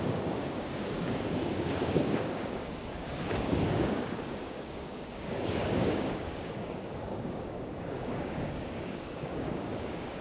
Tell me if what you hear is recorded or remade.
remade